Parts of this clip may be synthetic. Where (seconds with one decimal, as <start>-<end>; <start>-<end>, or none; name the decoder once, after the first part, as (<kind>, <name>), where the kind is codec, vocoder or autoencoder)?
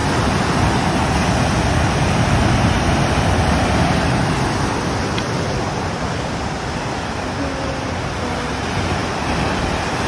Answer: 9.0-9.6 (vocoder, BigVGAN v2)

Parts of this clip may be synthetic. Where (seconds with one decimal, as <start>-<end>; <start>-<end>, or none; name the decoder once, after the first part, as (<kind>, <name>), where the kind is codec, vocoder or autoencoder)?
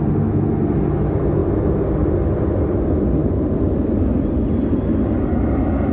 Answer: 3.2-4.4 (vocoder, BigVGAN v2)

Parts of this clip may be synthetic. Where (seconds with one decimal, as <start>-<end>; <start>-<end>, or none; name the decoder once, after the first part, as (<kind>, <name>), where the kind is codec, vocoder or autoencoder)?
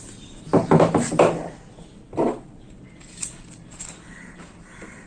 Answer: 0.0-0.5 (vocoder, BigVGAN v2); 2.8-5.1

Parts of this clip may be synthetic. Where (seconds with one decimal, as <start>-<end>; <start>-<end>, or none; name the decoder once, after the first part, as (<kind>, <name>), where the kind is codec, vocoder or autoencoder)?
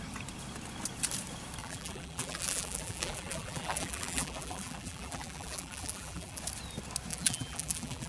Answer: 1.6-6.4 (vocoder, BigVGAN v2); 7.1-8.1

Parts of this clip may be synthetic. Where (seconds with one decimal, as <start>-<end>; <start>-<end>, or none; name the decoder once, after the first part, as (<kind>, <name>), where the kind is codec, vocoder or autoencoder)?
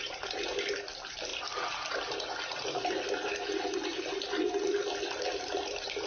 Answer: 0.0-1.3 (vocoder, BigVGAN v2); 5.0-6.1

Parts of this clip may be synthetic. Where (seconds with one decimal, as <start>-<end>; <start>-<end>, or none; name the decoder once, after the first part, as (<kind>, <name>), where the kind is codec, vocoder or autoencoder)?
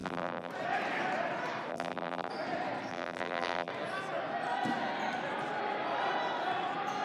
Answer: 0.0-0.5 (vocoder, BigVGAN v2); 1.7-2.3; 2.9-3.7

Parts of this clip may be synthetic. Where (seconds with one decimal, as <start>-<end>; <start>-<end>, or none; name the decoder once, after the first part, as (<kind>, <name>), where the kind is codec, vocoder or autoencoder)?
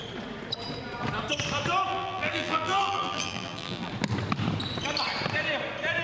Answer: 1.9-3.9 (vocoder, BigVGAN v2)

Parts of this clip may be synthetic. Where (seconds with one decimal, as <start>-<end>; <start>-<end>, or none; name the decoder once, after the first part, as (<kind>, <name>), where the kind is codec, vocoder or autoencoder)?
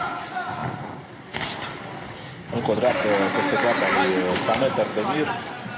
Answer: 4.9-5.8 (vocoder, BigVGAN v2)